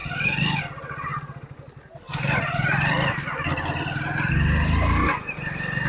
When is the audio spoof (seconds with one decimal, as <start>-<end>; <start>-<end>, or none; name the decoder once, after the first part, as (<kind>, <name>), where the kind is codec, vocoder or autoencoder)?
none